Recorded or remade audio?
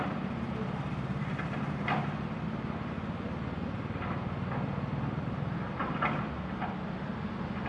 recorded